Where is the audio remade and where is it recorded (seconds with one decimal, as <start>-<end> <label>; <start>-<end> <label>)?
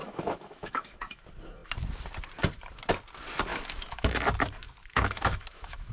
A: 0.0-1.2 remade; 1.2-3.5 recorded; 3.5-4.1 remade; 4.1-4.8 recorded; 4.8-5.9 remade